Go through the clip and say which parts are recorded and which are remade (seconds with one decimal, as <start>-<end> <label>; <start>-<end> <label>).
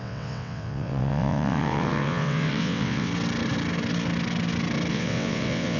0.0-3.1 remade; 3.1-4.9 recorded; 4.9-5.8 remade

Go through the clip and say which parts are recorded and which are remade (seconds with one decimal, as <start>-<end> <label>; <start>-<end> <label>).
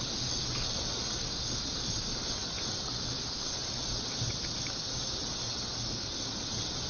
0.0-2.4 recorded; 2.4-3.2 remade; 3.2-6.9 recorded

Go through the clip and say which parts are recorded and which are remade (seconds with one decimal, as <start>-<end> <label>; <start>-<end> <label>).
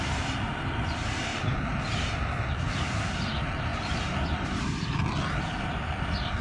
0.0-3.7 recorded; 3.7-5.4 remade; 5.4-6.4 recorded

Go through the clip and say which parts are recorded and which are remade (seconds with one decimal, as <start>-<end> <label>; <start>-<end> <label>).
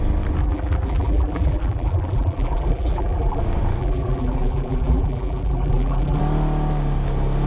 0.0-0.4 recorded; 0.4-3.4 remade; 3.4-3.8 recorded; 3.8-6.2 remade; 6.2-7.5 recorded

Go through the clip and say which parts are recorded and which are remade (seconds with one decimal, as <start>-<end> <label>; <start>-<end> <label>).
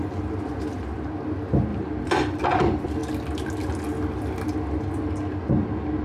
0.0-1.7 recorded; 1.7-2.6 remade; 2.6-6.0 recorded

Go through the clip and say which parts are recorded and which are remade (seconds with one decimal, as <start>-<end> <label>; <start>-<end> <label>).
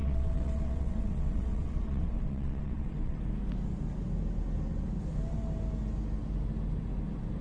0.0-3.2 remade; 3.2-7.4 recorded